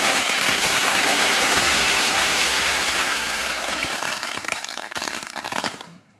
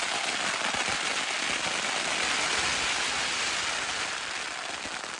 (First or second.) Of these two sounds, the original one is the second